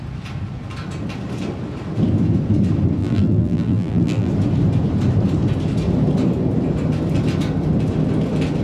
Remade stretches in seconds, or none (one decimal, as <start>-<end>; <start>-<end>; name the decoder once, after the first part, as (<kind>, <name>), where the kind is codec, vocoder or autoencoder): 3.0-4.3 (vocoder, BigVGAN v2)